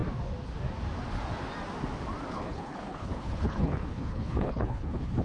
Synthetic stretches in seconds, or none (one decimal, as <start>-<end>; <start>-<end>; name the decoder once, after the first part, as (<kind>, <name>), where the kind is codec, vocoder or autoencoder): 2.3-5.2 (codec, HILCodec)

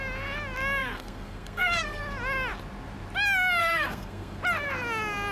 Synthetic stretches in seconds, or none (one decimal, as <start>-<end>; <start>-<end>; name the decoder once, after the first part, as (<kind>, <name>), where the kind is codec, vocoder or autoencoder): 0.8-2.0 (codec, SNAC); 3.6-4.4

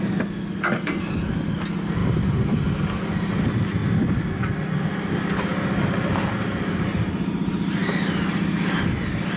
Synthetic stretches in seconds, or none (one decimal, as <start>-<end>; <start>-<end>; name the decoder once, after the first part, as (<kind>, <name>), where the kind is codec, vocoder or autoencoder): none

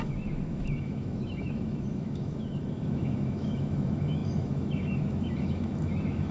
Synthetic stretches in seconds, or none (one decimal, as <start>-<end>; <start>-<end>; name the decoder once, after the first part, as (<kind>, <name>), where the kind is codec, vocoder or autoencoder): 0.0-6.3 (autoencoder, DAC-VAE)

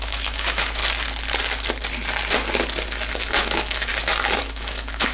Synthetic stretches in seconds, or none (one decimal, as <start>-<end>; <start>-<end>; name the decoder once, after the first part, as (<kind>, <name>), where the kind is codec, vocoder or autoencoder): 0.0-0.8 (autoencoder, DAC-VAE); 3.1-3.9; 4.4-5.1

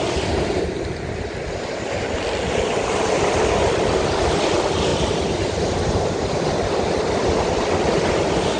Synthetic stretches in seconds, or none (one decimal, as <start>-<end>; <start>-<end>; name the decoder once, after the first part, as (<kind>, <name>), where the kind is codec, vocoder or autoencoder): none

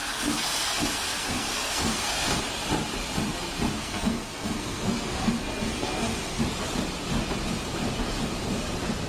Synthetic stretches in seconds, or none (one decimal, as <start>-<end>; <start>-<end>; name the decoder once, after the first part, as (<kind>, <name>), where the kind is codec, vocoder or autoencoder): 0.0-2.4 (codec, SNAC); 3.8-6.4